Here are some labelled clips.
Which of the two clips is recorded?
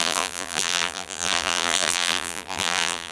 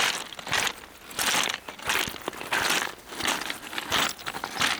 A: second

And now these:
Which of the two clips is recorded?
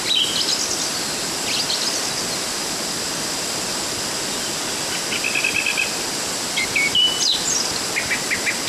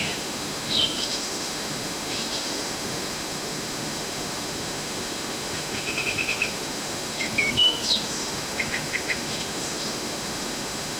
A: first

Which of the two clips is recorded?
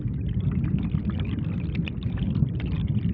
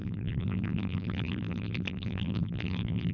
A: first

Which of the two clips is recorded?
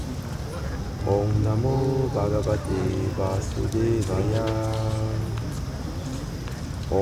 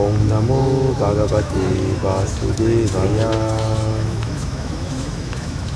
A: first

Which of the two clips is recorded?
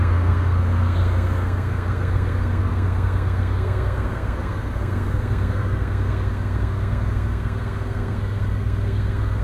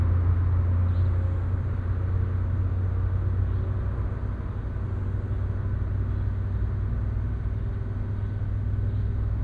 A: second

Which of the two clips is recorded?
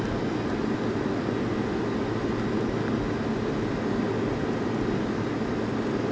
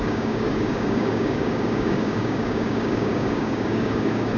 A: first